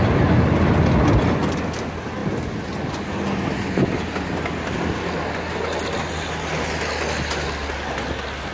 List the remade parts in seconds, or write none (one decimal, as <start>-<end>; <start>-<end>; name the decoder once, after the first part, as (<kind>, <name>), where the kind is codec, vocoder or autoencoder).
none